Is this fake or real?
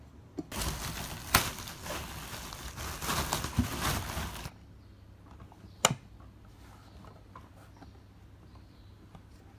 real